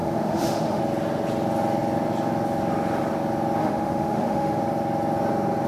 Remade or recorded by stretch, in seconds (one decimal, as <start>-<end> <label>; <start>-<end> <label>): 0.0-0.8 remade; 0.8-3.6 recorded; 3.6-4.6 remade; 4.6-5.7 recorded